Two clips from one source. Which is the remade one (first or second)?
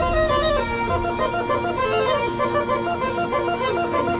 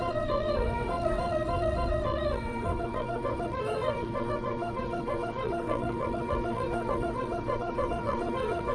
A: second